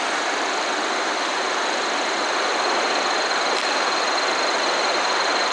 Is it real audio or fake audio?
fake